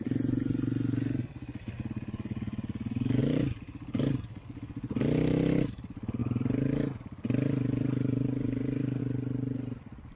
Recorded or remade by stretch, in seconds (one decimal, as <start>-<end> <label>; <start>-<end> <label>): 0.0-3.2 recorded; 3.2-4.6 remade; 4.6-6.2 recorded; 6.2-9.0 remade; 9.0-10.2 recorded